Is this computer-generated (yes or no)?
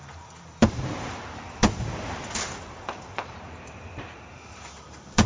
yes